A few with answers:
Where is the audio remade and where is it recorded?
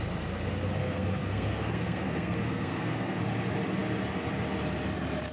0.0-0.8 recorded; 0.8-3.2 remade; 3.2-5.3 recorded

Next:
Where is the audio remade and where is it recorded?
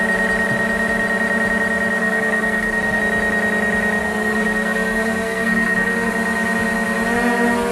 0.0-2.0 recorded; 2.0-3.0 remade; 3.0-4.0 recorded; 4.0-6.1 remade; 6.1-7.7 recorded